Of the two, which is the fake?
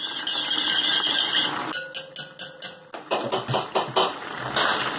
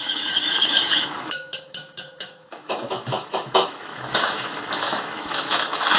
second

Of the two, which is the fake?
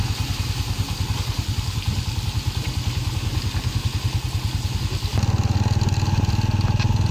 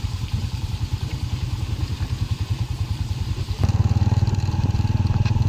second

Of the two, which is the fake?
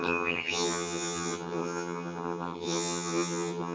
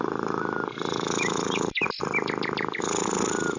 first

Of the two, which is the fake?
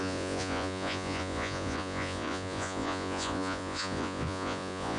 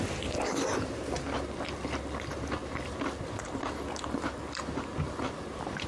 first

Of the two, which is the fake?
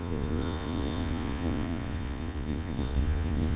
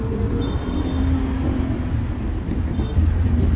first